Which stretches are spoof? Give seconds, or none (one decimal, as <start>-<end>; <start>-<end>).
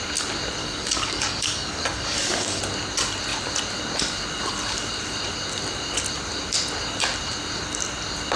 0.6-2.6